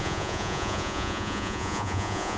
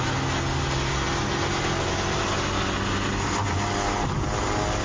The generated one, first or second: first